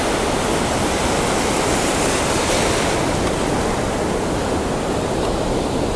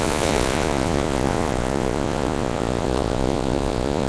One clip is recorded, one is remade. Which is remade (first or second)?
second